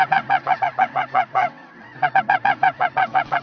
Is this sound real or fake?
fake